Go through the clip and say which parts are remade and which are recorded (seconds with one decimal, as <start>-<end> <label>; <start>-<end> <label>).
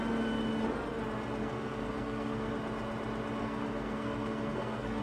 0.0-1.4 recorded; 1.4-2.5 remade; 2.5-3.4 recorded; 3.4-5.0 remade